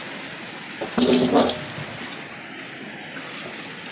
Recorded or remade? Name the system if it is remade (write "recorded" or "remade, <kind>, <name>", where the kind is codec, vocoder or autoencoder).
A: recorded